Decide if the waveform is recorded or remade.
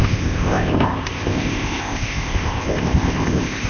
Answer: remade